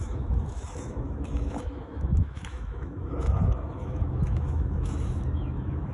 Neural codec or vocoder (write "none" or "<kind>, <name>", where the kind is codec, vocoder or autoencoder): autoencoder, DAC-VAE